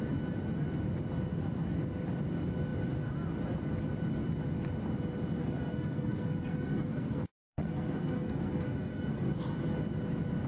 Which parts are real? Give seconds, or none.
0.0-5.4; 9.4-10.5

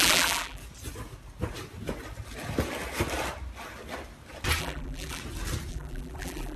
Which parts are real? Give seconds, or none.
0.6-4.6; 5.2-5.7

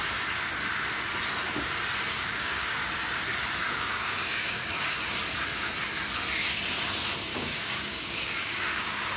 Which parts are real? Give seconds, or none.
0.0-2.1; 2.9-3.6; 5.2-7.3

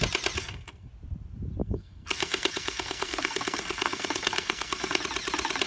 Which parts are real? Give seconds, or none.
0.0-0.4; 0.9-1.6; 5.0-5.7